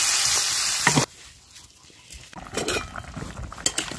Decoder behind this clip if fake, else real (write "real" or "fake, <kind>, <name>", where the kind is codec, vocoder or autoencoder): real